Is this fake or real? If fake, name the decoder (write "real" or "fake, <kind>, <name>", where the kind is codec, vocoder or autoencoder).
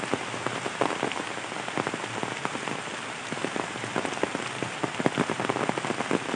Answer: real